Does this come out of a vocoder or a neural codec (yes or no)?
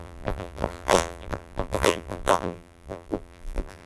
yes